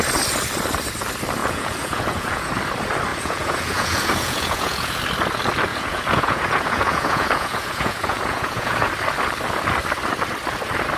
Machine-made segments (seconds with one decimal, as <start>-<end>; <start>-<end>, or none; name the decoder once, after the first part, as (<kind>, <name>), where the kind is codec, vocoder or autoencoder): 1.4-2.5 (vocoder, Vocos); 3.1-5.0; 5.7-8.9